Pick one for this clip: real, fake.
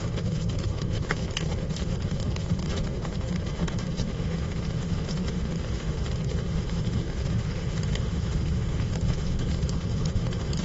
fake